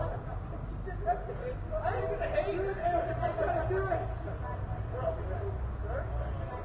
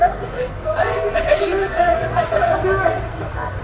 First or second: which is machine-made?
second